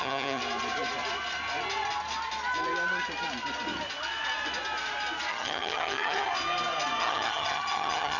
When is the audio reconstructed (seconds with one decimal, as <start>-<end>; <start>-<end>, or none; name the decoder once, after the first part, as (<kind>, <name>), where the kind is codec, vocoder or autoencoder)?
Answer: 0.0-0.4 (vocoder, HiFi-GAN); 5.3-6.3; 7.0-8.2